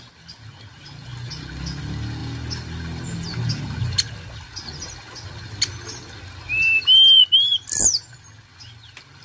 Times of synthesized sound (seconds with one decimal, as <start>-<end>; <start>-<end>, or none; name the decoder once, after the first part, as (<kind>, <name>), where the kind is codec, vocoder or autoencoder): none